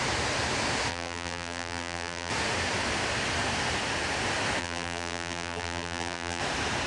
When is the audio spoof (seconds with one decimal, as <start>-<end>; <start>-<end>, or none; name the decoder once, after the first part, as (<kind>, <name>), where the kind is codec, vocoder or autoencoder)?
0.9-2.3 (vocoder, BigVGAN v2); 4.6-6.4

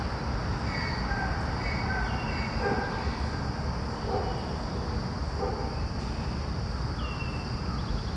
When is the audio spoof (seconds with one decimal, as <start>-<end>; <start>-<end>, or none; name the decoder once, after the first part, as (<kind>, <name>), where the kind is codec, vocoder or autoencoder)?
none

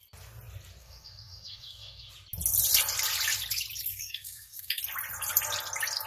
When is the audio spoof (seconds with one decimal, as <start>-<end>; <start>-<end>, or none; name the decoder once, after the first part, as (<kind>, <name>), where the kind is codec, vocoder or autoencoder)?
0.8-2.1 (codec, DAC); 3.9-4.8

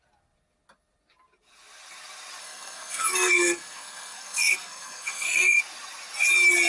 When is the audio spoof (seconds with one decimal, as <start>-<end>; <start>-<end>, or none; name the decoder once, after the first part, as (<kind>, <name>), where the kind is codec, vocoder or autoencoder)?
2.4-5.6 (codec, SNAC)